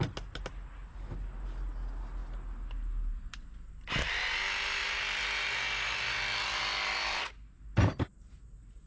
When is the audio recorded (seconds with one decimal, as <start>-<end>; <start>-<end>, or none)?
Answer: 0.0-8.9